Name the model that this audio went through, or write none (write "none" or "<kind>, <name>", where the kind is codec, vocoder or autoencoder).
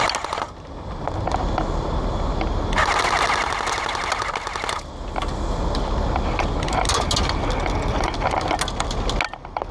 none